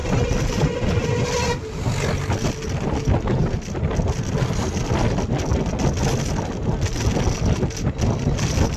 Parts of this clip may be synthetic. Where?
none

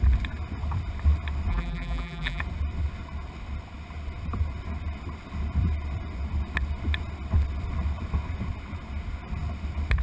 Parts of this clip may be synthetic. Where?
1.5-2.4 (vocoder, BigVGAN v2)

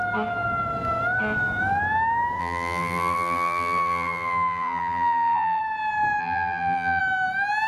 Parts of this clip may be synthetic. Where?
2.4-5.6 (vocoder, BigVGAN v2); 6.2-7.0

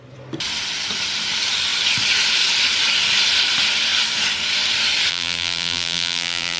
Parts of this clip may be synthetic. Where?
5.1-6.6 (vocoder, BigVGAN v2)

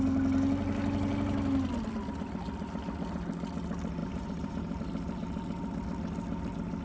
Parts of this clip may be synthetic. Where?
4.0-4.8 (vocoder, BigVGAN v2)

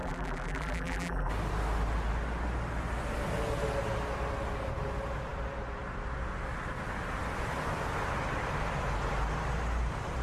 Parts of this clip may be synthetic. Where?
0.0-1.3 (vocoder, BigVGAN v2)